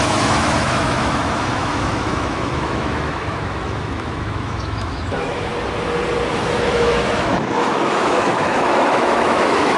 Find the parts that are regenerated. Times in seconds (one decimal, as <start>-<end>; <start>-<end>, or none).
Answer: 0.0-5.5; 6.3-9.8